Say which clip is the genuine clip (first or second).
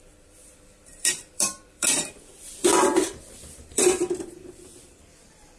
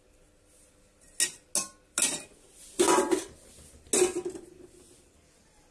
second